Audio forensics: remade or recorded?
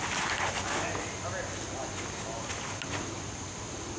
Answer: recorded